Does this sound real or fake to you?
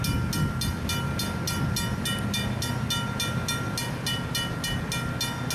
real